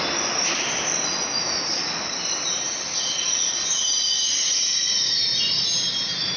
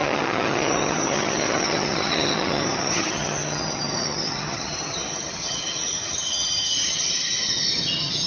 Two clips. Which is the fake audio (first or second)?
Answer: second